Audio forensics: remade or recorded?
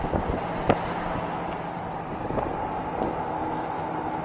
recorded